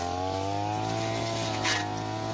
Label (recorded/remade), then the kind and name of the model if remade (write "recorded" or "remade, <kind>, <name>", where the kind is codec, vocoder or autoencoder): recorded